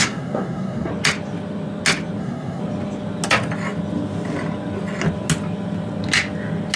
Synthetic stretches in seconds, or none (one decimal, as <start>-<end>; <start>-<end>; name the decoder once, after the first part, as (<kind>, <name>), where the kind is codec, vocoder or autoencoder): 0.0-0.9 (codec, SNAC); 2.2-2.6